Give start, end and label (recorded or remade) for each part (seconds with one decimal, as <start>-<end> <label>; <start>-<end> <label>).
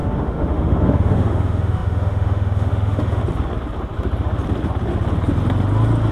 0.0-3.2 remade; 3.2-6.1 recorded